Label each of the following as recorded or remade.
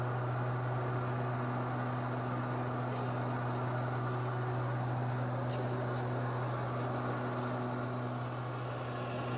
recorded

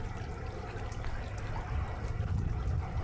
recorded